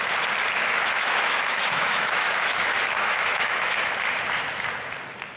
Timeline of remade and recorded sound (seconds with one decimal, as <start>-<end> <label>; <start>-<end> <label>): 0.0-0.7 recorded; 0.7-3.9 remade; 3.9-5.4 recorded